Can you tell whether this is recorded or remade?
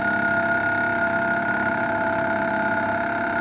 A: recorded